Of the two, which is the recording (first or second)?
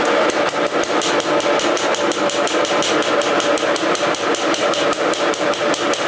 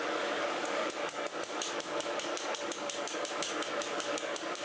first